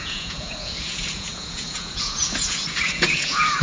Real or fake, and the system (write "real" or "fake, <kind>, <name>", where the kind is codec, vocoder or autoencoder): fake, vocoder, Vocos